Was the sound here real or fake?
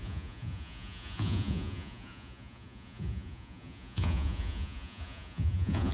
fake